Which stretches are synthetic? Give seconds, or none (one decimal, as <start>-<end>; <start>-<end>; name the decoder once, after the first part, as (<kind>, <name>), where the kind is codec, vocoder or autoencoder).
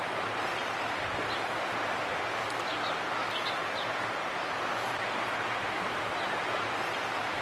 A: 0.0-0.6 (vocoder, BigVGAN v2); 1.6-7.4